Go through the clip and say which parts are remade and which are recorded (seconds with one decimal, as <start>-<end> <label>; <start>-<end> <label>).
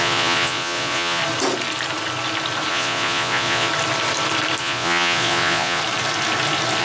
0.0-1.2 remade; 1.2-2.7 recorded; 2.7-3.7 remade; 3.7-4.6 recorded; 4.6-5.8 remade; 5.8-6.8 recorded